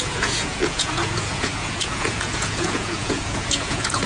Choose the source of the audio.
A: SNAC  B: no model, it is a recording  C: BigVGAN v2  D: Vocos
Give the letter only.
D